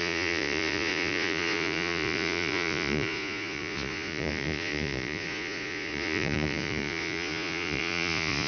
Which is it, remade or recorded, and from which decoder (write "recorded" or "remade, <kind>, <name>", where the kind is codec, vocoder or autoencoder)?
remade, vocoder, Vocos